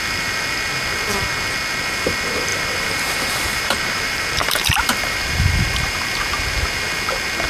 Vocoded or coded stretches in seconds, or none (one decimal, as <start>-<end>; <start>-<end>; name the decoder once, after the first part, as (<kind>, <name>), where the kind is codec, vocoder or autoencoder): 2.5-7.0 (vocoder, BigVGAN v2)